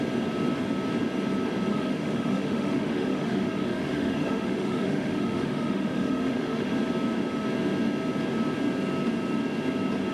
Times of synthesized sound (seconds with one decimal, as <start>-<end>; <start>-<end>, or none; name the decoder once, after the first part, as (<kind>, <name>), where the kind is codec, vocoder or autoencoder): 1.7-6.7 (autoencoder, DAC-VAE)